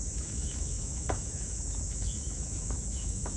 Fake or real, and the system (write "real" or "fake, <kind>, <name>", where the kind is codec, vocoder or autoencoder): fake, autoencoder, DAC-VAE